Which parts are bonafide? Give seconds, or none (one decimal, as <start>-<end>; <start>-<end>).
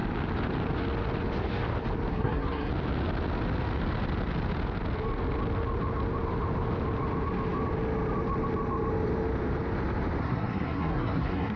0.0-2.1; 2.7-10.2